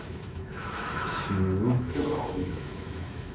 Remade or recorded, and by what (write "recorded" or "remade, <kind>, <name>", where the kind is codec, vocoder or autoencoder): remade, autoencoder, DAC-VAE